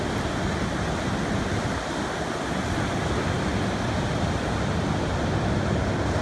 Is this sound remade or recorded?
recorded